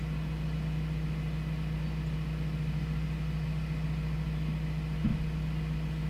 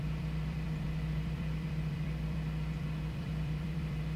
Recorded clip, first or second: first